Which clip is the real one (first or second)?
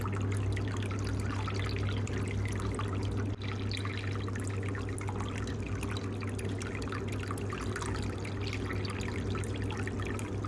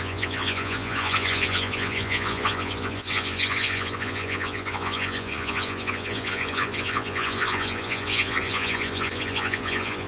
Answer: first